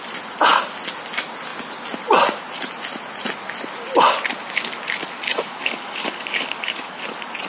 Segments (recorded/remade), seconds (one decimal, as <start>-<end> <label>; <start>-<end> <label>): 0.0-5.3 recorded; 5.3-7.0 remade; 7.0-7.5 recorded